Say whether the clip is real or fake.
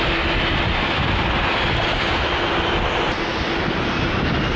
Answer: real